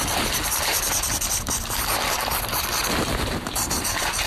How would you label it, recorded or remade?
recorded